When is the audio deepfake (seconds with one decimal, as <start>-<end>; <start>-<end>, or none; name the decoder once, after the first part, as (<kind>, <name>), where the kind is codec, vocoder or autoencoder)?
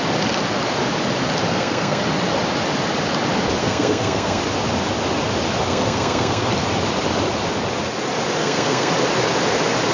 1.5-2.0 (codec, SNAC); 3.6-4.4; 5.7-6.5; 8.4-8.9